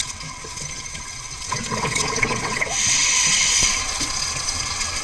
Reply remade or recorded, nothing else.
remade